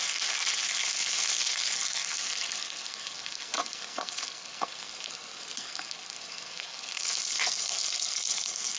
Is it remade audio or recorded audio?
remade